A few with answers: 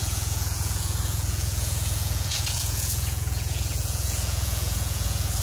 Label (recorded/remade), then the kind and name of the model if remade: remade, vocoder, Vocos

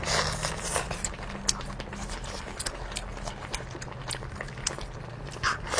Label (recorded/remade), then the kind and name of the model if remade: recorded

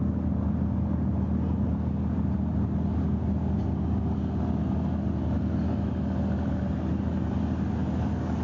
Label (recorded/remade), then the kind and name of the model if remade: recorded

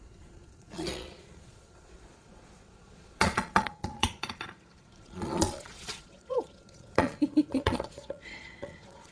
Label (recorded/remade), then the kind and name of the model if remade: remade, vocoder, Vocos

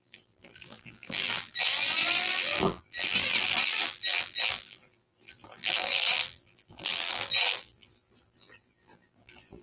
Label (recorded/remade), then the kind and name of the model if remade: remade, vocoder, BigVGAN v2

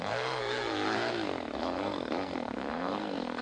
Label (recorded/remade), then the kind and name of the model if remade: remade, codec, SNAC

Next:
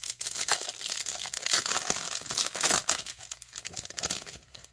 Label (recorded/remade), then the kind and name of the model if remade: remade, codec, SNAC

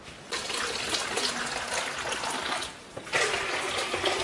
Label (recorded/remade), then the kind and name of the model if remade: recorded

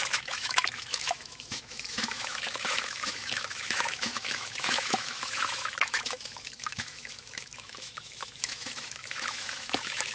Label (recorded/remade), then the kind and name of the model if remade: remade, autoencoder, DAC-VAE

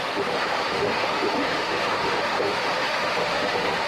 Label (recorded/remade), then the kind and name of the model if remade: remade, autoencoder, DAC-VAE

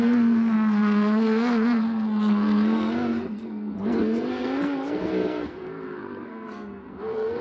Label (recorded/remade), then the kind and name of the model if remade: remade, codec, SNAC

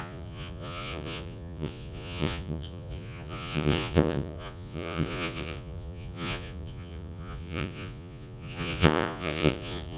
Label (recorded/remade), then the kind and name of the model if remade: remade, vocoder, Vocos